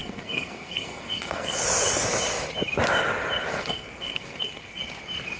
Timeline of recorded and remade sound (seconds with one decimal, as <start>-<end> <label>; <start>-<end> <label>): 0.0-1.6 remade; 1.6-3.5 recorded; 3.5-4.8 remade; 4.8-5.4 recorded